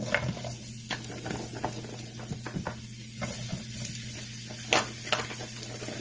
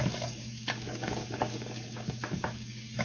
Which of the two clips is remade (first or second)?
second